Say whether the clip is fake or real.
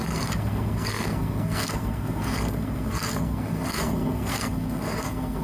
fake